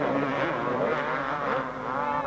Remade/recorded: remade